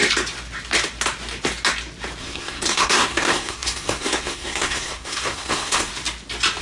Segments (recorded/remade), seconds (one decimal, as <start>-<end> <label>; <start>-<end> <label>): 0.0-2.2 recorded; 2.2-5.9 remade; 5.9-6.6 recorded